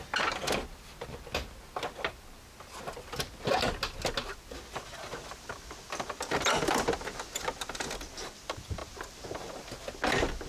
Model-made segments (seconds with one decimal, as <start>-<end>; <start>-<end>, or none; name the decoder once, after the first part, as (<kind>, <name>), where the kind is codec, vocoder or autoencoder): none